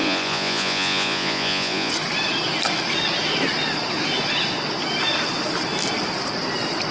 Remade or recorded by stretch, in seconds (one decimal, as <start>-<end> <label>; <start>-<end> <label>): 0.0-1.9 remade; 1.9-6.9 recorded